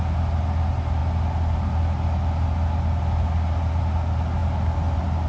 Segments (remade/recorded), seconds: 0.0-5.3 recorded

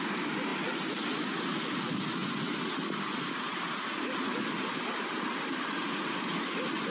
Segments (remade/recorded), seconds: 0.0-6.9 recorded

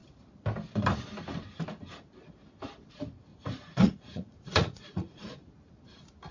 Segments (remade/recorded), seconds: 0.0-3.3 recorded; 3.3-5.5 remade; 5.5-6.3 recorded

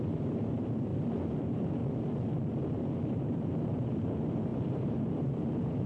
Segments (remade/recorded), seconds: 0.0-0.9 remade; 0.9-1.4 recorded; 1.4-1.8 remade; 1.8-2.8 recorded; 2.8-5.9 remade

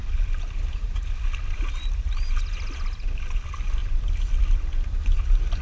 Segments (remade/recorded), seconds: 0.0-5.6 recorded

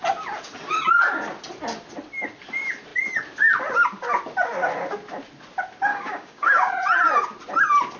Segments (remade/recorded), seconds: 0.0-5.9 recorded; 5.9-6.7 remade; 6.7-8.0 recorded